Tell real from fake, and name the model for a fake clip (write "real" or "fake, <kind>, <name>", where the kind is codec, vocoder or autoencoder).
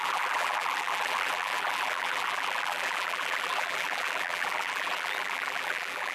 fake, vocoder, BigVGAN v2